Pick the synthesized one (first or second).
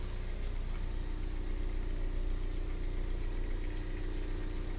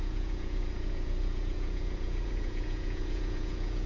second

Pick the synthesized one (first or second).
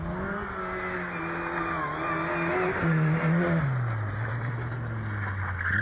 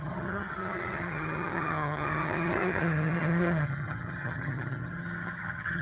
second